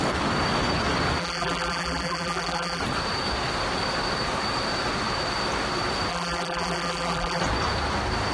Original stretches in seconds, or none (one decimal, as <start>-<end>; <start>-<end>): 0.0-1.2; 2.8-6.1; 7.4-8.3